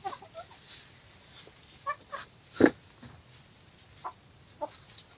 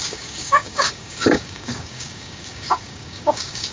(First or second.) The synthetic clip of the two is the second